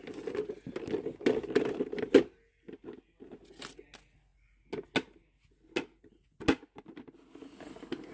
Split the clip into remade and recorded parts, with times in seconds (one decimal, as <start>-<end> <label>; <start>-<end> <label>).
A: 0.0-8.1 recorded